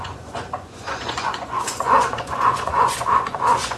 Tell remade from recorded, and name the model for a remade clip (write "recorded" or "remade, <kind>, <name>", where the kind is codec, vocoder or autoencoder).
remade, vocoder, Vocos